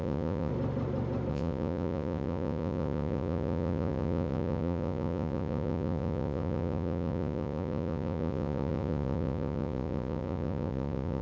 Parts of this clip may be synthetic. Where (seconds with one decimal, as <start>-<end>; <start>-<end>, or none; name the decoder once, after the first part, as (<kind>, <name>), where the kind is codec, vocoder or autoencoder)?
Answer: 0.0-0.5 (vocoder, Vocos); 1.3-11.2